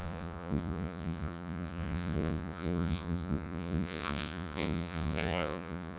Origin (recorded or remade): remade